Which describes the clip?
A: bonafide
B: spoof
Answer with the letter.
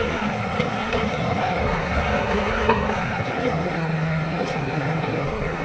B